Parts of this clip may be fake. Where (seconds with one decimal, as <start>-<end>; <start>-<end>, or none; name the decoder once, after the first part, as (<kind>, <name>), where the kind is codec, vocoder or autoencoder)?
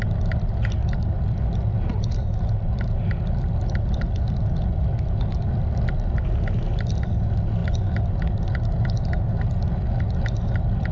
none